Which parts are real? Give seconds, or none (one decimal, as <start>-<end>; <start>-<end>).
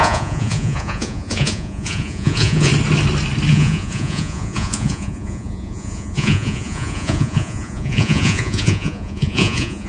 2.7-3.5